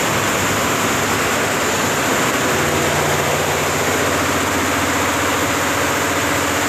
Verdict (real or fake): real